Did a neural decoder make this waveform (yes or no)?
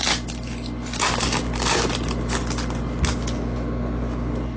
no